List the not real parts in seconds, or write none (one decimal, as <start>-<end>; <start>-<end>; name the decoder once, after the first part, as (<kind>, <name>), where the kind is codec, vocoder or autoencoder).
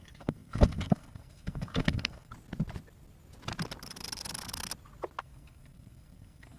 0.0-2.3 (codec, SNAC); 5.2-6.6